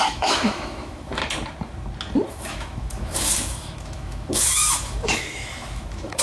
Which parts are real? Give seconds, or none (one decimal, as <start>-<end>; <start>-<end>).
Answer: 1.2-2.3